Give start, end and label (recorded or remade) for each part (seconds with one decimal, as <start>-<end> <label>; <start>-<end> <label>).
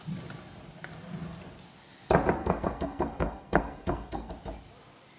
0.0-2.4 recorded; 2.4-4.3 remade; 4.3-5.2 recorded